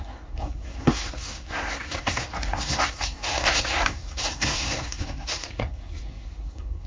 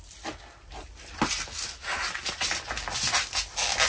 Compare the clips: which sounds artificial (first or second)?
first